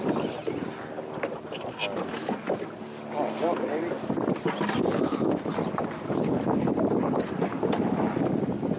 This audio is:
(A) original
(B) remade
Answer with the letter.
A